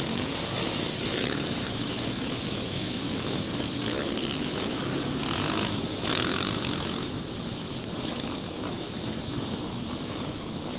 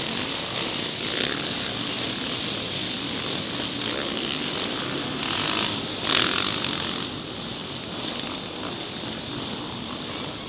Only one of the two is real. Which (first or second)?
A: second